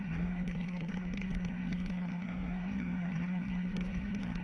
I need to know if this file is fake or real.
fake